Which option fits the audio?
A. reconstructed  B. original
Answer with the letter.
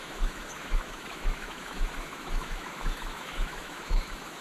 A